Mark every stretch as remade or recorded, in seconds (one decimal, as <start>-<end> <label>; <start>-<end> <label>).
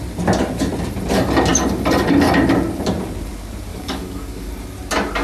0.0-3.7 recorded; 3.7-4.5 remade; 4.5-5.2 recorded